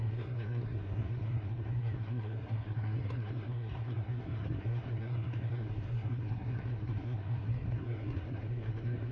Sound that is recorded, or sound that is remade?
remade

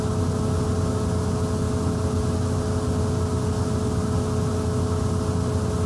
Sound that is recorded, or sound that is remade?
recorded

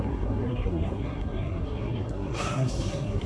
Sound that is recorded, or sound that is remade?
remade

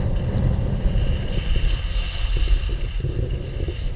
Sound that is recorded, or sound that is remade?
recorded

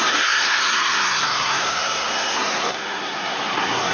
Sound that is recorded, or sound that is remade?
remade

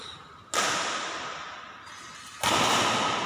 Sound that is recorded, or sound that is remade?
recorded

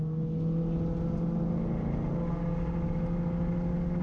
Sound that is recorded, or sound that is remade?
recorded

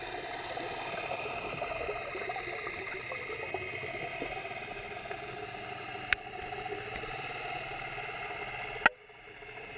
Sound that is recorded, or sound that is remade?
recorded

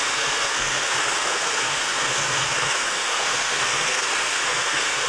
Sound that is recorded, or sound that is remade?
remade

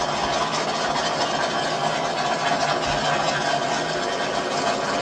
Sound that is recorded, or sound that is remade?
recorded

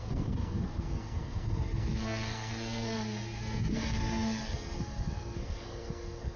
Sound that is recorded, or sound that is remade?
remade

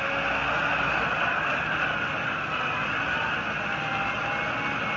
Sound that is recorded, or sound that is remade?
recorded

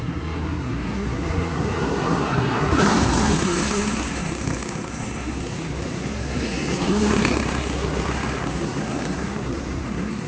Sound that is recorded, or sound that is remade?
remade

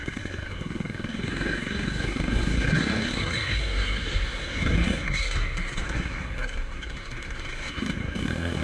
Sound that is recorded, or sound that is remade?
remade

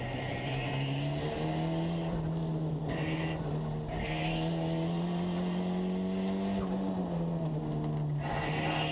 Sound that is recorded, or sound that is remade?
recorded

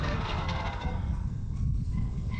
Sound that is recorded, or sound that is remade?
remade